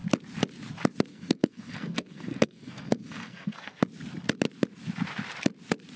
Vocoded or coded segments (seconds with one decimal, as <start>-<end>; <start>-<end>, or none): 1.1-3.8